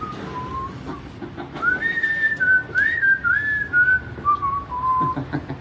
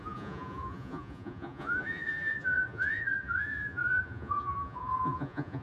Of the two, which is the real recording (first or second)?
first